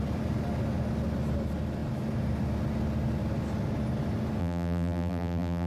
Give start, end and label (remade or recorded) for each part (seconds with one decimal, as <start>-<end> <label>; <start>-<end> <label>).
0.0-4.4 recorded; 4.4-5.7 remade